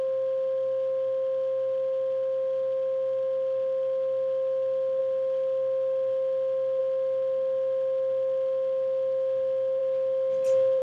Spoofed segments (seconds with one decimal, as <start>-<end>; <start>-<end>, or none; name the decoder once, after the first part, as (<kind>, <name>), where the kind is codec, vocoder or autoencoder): none